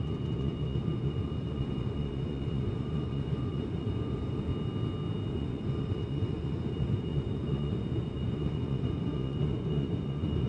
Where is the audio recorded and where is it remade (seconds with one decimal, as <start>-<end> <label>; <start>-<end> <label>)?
0.0-4.5 remade; 4.5-5.3 recorded; 5.3-10.5 remade